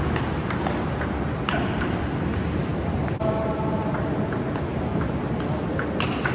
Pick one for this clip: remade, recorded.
recorded